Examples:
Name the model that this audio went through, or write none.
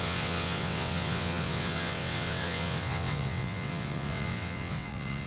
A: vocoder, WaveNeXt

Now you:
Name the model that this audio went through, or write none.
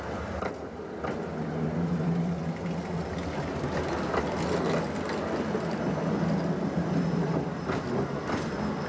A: none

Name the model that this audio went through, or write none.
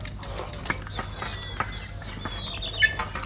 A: none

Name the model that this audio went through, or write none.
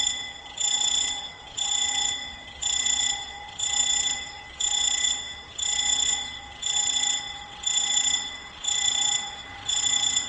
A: vocoder, WaveNeXt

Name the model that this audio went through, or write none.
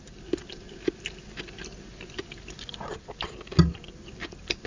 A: none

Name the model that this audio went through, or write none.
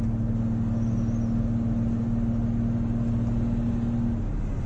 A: none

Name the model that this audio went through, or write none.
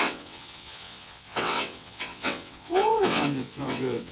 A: vocoder, WaveNeXt